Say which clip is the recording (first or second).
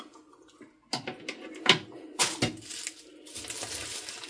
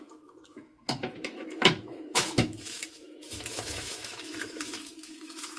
first